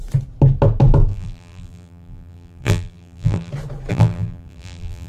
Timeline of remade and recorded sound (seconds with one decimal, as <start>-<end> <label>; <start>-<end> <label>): 0.0-1.1 recorded; 1.1-3.5 remade; 3.5-3.9 recorded; 3.9-5.1 remade